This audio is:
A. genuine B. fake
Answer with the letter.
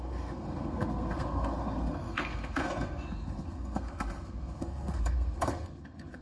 B